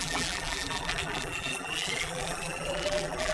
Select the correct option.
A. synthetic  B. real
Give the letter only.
A